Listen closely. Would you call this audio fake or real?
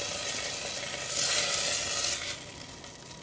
real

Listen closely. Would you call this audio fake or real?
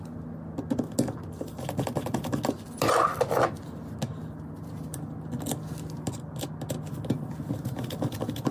real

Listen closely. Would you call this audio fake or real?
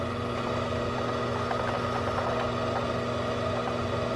real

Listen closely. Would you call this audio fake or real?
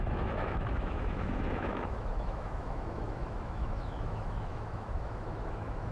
fake